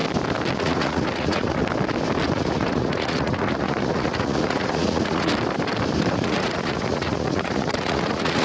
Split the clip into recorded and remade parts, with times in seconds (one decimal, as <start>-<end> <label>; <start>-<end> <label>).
0.0-0.6 recorded; 0.6-1.6 remade; 1.6-2.3 recorded; 2.3-5.3 remade; 5.3-6.1 recorded; 6.1-8.4 remade